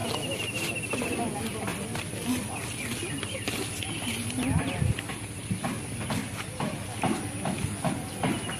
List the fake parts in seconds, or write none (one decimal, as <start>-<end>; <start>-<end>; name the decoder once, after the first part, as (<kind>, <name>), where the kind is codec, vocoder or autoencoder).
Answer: 1.7-5.4 (vocoder, BigVGAN v2); 6.2-7.2